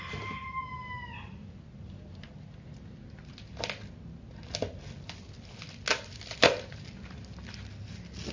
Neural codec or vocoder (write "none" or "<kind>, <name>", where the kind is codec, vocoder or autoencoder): none